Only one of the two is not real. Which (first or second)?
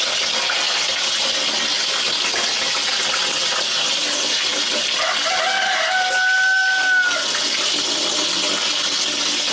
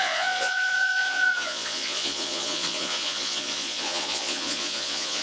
second